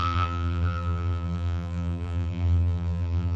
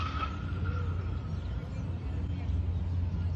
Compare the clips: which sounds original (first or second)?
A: second